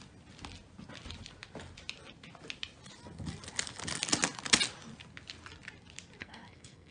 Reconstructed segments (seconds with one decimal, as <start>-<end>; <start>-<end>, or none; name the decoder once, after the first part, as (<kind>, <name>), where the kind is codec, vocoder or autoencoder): 6.2-6.9 (codec, SNAC)